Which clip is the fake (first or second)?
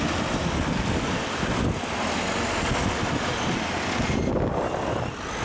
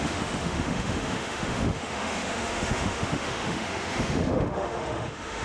second